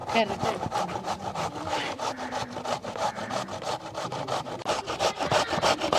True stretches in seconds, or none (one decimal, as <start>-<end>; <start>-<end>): 0.0-2.8; 3.8-6.0